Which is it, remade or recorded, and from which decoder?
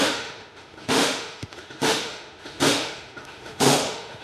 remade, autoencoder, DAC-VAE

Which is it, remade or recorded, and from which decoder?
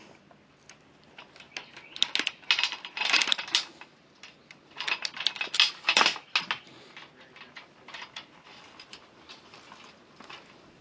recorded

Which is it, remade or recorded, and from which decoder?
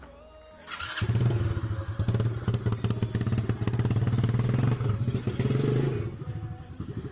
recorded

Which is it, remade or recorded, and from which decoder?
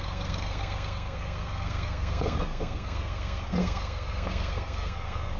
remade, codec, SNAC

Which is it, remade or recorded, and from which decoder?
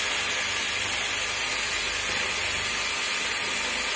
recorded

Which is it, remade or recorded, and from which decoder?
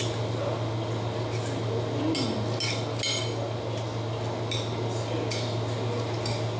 recorded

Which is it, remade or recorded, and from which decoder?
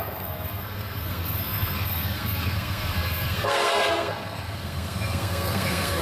remade, codec, SNAC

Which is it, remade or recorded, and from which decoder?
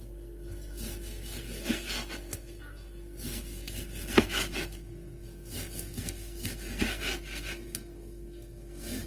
remade, codec, SNAC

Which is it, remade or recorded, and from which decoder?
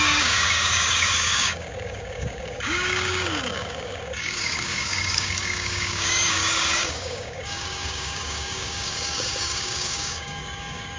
remade, codec, DAC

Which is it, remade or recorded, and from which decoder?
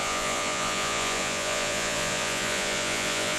remade, vocoder, Vocos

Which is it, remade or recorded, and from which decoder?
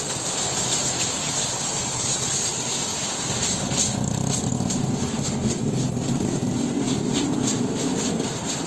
recorded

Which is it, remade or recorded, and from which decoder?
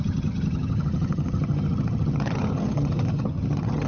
remade, vocoder, HiFi-GAN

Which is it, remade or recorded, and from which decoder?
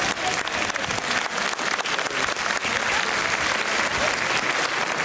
recorded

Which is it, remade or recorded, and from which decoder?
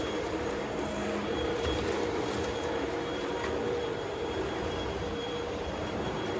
remade, vocoder, BigVGAN v2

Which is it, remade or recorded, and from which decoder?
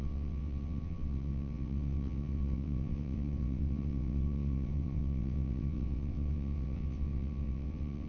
remade, vocoder, WaveNeXt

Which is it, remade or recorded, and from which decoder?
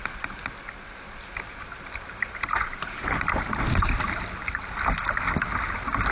recorded